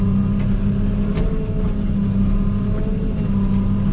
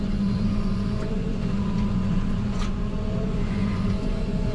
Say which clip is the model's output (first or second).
second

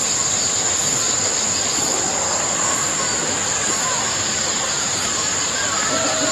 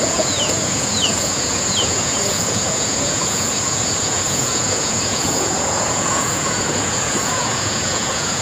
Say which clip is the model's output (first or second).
second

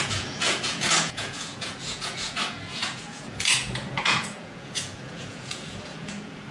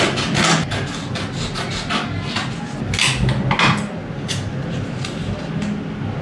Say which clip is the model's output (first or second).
first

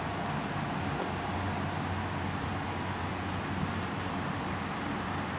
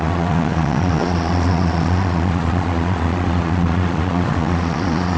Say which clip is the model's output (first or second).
second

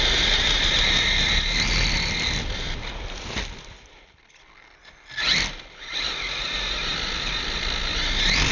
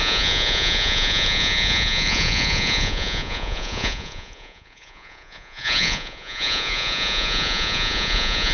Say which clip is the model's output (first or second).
second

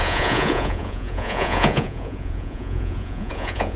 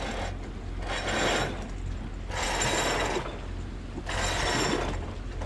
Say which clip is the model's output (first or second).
first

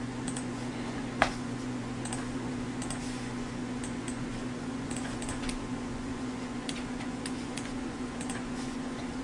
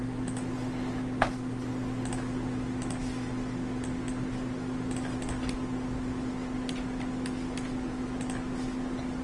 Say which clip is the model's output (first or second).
first